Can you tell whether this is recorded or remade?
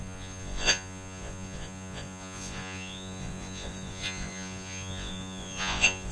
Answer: remade